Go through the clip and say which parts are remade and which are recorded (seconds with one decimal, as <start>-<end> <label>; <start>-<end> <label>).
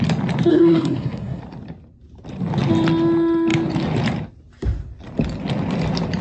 0.0-0.5 recorded; 0.5-1.4 remade; 1.4-6.2 recorded